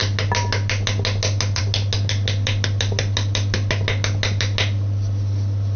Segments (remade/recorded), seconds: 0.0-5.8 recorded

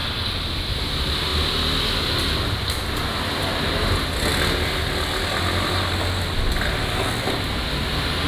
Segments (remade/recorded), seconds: 0.0-8.3 recorded

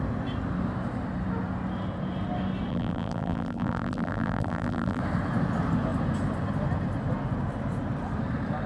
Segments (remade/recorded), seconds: 0.0-2.7 recorded; 2.7-5.0 remade; 5.0-8.7 recorded

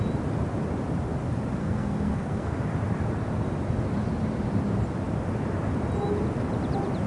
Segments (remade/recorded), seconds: 0.0-1.6 recorded; 1.6-2.6 remade; 2.6-7.1 recorded

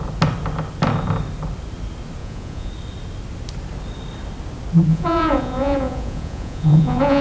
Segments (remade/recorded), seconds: 0.0-2.2 recorded; 2.2-2.7 remade; 2.7-4.9 recorded; 4.9-7.2 remade